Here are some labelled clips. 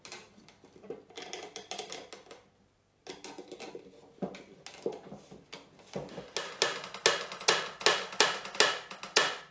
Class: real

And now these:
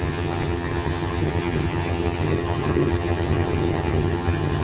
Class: fake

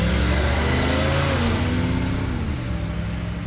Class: real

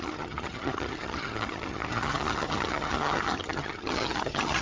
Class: fake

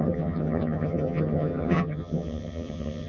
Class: fake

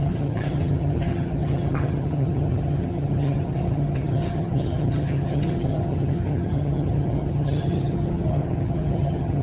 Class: fake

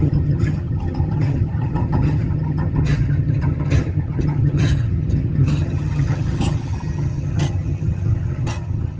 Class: fake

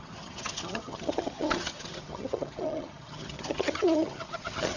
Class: fake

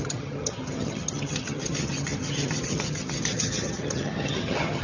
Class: fake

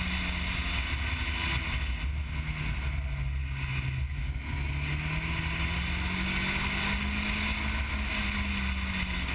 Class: real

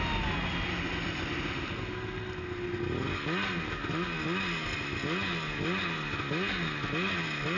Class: real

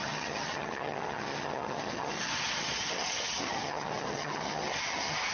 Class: fake